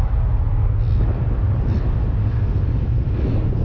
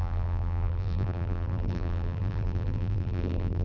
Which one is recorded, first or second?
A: first